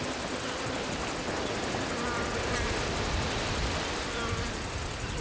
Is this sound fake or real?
real